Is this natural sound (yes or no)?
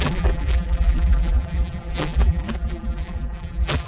no